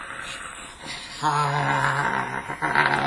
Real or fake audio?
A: real